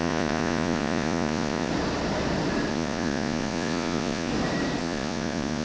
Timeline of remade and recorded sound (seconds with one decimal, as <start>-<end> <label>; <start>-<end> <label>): 0.0-1.7 remade; 1.7-2.7 recorded; 2.7-4.3 remade; 4.3-4.8 recorded; 4.8-5.6 remade